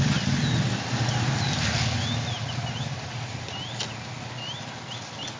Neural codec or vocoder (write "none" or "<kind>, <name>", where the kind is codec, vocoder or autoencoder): none